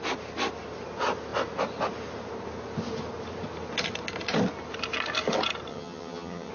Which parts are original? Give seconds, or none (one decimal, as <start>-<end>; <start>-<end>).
0.0-5.7